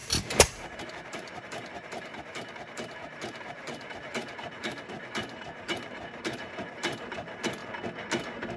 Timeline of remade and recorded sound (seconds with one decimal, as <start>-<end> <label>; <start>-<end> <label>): 0.0-7.6 remade; 7.6-8.2 recorded; 8.2-8.6 remade